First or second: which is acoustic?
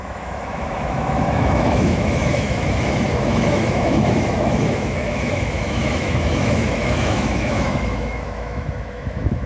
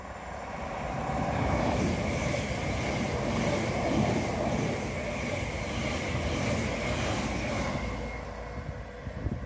second